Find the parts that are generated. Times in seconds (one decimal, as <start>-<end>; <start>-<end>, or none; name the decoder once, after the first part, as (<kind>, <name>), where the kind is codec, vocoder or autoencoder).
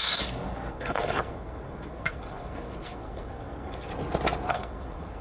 0.0-3.9 (codec, SNAC); 4.5-5.2